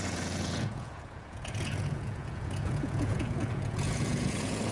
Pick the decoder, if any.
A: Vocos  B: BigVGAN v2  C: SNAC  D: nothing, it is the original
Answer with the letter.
A